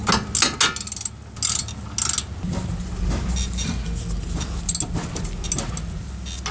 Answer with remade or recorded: recorded